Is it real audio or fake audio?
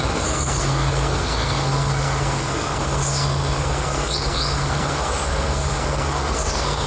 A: fake